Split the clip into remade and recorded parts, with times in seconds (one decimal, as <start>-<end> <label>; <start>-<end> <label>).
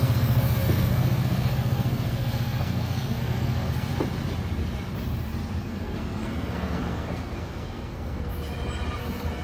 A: 0.0-3.9 remade; 3.9-5.6 recorded; 5.6-8.3 remade; 8.3-9.0 recorded; 9.0-9.4 remade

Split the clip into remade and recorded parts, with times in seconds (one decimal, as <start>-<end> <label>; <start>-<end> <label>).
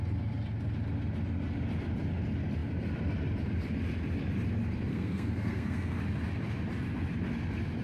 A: 0.0-4.9 recorded; 4.9-6.0 remade; 6.0-7.8 recorded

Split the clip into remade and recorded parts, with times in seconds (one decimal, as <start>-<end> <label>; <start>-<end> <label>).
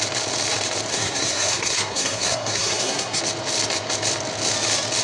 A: 0.0-0.9 recorded; 0.9-3.2 remade; 3.2-5.0 recorded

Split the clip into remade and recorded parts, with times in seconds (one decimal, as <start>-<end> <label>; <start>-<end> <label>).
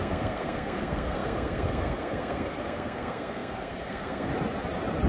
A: 0.0-4.3 remade; 4.3-5.1 recorded